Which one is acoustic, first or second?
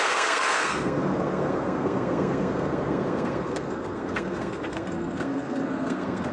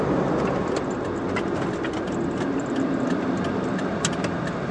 second